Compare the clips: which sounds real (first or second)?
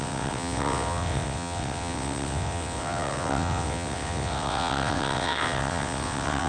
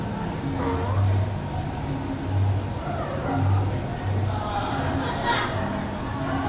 second